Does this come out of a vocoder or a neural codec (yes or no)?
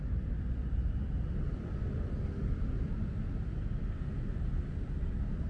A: no